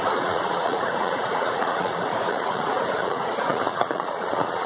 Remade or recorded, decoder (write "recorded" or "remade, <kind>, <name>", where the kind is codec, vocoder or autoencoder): remade, vocoder, Vocos